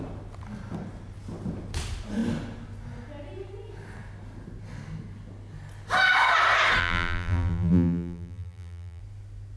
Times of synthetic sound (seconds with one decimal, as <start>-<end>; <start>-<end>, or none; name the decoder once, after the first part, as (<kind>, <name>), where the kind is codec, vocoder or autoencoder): 6.8-9.0 (vocoder, BigVGAN v2)